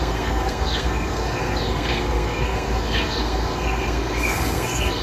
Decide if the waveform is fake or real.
fake